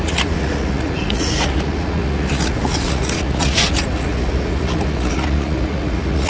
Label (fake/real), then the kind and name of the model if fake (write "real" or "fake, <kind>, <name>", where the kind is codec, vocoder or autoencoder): fake, vocoder, Vocos